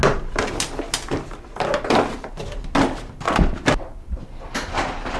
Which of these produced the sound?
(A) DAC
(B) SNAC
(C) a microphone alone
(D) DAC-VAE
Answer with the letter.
C